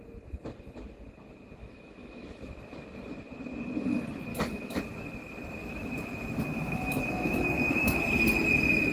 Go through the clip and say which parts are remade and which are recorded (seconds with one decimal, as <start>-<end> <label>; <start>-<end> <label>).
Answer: 0.0-1.6 recorded; 1.6-2.4 remade; 2.4-4.3 recorded; 4.3-4.8 remade; 4.8-5.6 recorded; 5.6-8.0 remade; 8.0-8.9 recorded